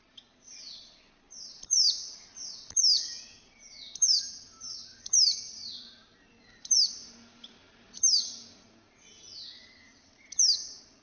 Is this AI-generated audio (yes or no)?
no